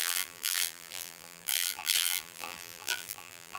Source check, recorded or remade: remade